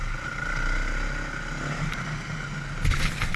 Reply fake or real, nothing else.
real